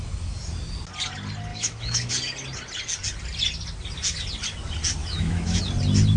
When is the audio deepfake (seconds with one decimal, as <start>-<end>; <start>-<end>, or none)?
1.5-2.1; 5.0-5.6